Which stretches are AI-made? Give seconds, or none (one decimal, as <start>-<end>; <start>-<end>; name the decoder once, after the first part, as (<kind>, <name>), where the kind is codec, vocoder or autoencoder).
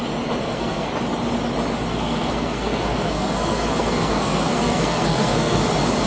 0.4-0.9 (codec, SNAC); 1.9-5.6